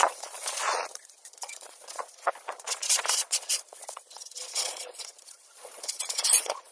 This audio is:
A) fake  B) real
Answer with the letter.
A